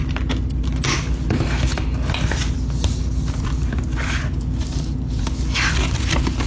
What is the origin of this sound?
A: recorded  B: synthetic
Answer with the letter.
A